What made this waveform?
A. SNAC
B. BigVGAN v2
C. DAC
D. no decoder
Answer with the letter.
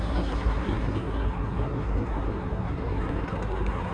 A